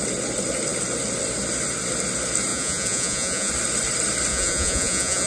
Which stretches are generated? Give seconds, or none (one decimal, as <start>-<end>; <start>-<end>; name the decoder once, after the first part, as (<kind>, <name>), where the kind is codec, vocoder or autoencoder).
2.5-3.5 (vocoder, Vocos); 4.3-5.3